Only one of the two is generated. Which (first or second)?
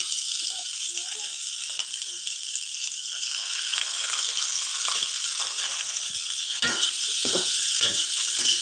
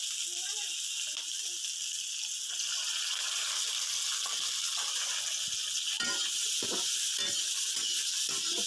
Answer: first